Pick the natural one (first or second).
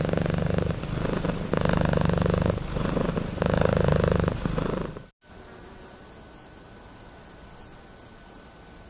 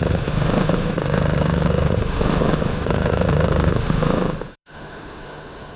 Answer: first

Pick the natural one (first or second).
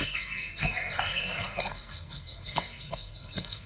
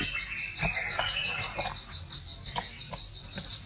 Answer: second